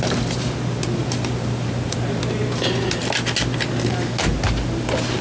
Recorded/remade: recorded